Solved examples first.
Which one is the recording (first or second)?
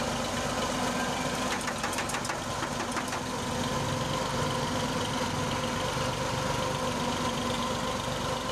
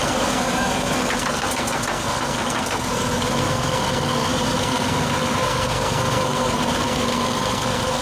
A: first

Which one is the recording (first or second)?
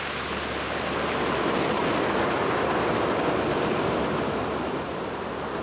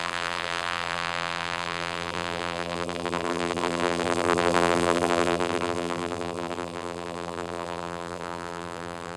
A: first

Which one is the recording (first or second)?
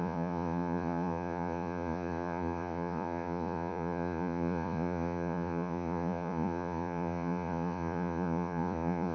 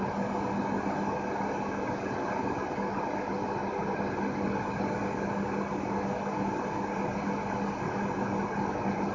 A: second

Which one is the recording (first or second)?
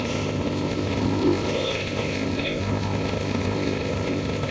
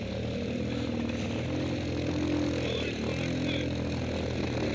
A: second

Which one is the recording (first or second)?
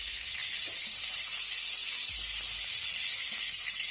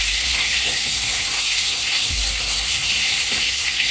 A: first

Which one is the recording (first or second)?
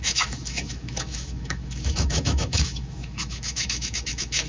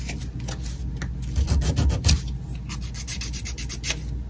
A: second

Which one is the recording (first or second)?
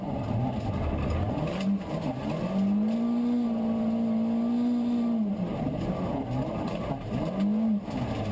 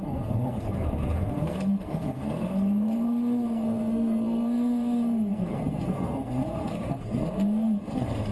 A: first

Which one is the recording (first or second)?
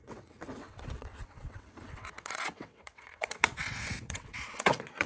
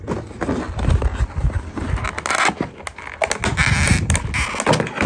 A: second